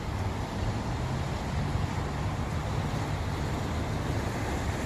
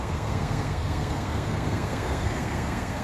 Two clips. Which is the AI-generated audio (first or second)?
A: second